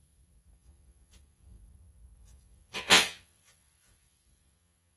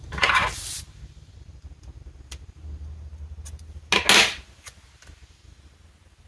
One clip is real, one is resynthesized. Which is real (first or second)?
second